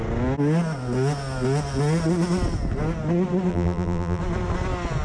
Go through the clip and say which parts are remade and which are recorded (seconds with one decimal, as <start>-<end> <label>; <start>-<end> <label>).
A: 0.0-3.5 recorded; 3.5-4.2 remade; 4.2-5.0 recorded